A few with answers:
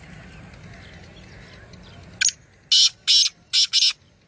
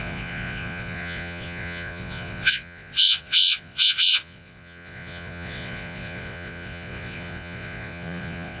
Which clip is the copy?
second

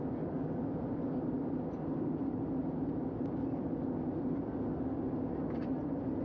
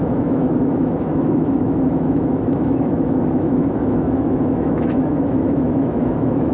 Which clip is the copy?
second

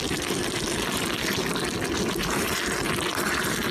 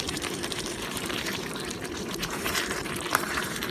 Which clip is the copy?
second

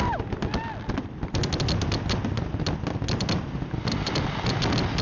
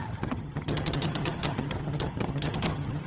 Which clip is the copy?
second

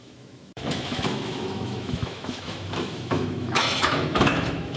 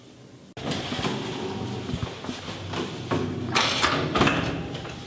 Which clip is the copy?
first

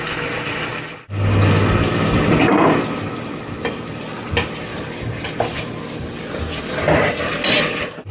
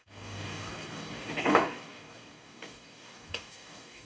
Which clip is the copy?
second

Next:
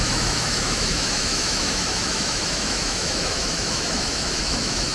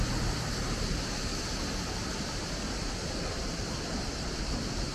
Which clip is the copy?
first